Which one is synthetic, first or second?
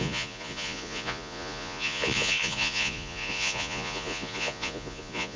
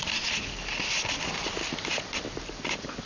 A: first